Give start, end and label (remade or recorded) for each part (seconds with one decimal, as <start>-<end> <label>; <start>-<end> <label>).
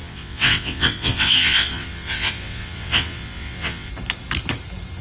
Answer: 0.0-3.9 remade; 3.9-5.0 recorded